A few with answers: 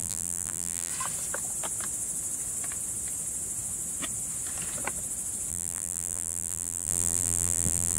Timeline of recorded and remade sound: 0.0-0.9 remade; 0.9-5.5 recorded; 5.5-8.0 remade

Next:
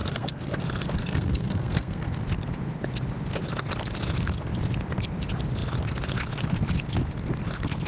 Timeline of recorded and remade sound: 0.0-0.6 remade; 0.6-1.0 recorded; 1.0-2.2 remade; 2.2-7.9 recorded

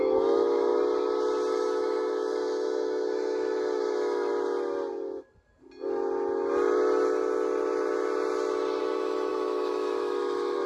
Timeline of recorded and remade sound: 0.0-0.7 remade; 0.7-1.5 recorded; 1.5-4.3 remade; 4.3-8.8 recorded; 8.8-10.7 remade

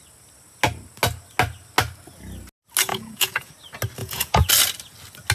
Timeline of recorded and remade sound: 0.0-2.9 recorded; 2.9-3.5 remade; 3.5-4.0 recorded; 4.0-4.5 remade; 4.5-5.3 recorded

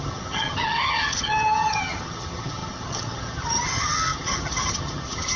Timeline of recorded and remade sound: 0.0-5.4 remade

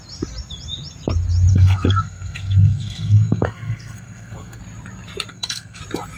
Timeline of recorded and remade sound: 0.0-1.5 recorded; 1.5-4.6 remade; 4.6-5.3 recorded; 5.3-5.8 remade; 5.8-6.2 recorded

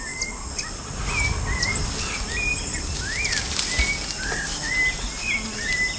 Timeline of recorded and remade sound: 0.0-6.0 recorded

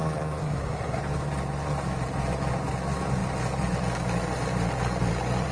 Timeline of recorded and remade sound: 0.0-0.4 recorded; 0.4-1.0 remade; 1.0-5.5 recorded